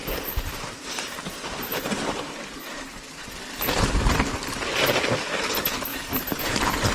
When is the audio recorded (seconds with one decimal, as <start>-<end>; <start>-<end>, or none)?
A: 3.3-5.9; 6.4-6.9

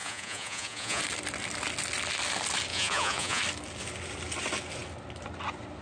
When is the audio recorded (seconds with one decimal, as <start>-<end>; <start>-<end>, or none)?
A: 1.0-2.7; 3.4-5.8

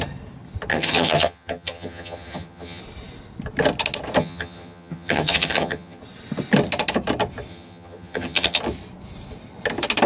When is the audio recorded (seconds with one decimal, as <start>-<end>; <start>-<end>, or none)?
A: 0.0-0.7; 2.8-4.2; 6.0-7.5; 8.6-10.1

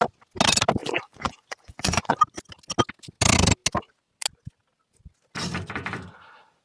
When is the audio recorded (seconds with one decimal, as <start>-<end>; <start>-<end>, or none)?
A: 0.0-0.8; 2.2-6.6

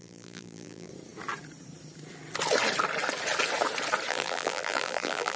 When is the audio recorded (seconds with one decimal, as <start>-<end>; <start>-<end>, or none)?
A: 0.9-4.1